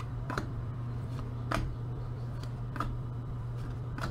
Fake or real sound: fake